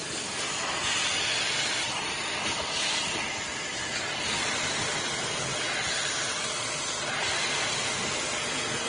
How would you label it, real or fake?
real